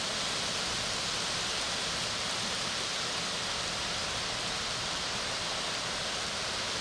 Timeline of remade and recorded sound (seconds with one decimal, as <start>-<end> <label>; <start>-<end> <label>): 0.0-6.8 recorded